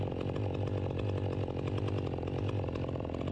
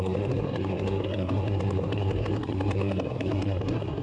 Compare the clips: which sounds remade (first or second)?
second